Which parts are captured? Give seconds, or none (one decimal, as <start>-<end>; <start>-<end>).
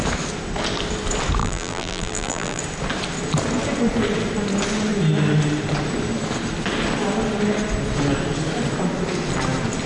0.0-1.4; 2.6-9.9